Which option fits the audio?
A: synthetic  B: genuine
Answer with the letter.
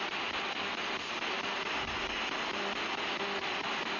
B